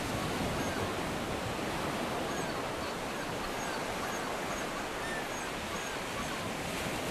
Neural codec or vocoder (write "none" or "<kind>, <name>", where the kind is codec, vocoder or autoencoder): none